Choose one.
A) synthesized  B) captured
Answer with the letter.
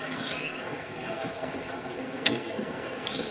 A